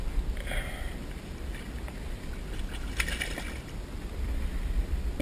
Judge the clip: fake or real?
real